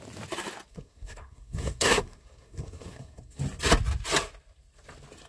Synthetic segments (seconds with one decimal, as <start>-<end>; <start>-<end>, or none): 0.7-3.4